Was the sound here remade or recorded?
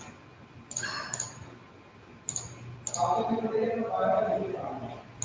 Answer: recorded